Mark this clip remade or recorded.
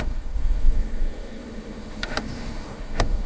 remade